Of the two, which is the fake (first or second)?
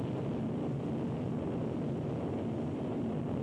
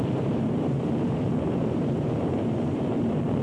second